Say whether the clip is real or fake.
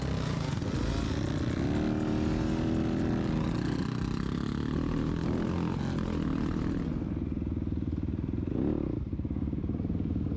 real